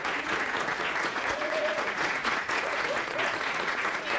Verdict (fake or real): fake